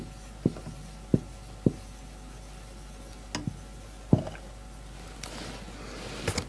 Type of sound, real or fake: real